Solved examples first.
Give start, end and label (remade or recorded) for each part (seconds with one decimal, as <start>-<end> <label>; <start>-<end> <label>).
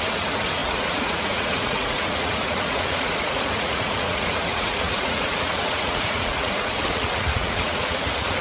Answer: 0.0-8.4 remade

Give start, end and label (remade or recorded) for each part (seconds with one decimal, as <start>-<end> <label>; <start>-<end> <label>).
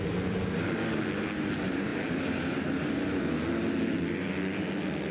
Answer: 0.0-5.1 recorded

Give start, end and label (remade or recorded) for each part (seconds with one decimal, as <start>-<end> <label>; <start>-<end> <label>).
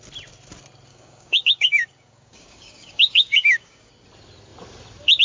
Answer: 0.0-0.9 recorded; 0.9-3.9 remade; 3.9-5.2 recorded